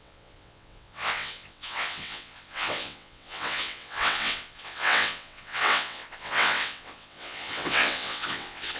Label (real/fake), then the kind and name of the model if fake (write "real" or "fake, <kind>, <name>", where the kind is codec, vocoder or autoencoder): fake, vocoder, WaveNeXt